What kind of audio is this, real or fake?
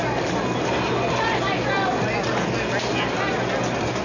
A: real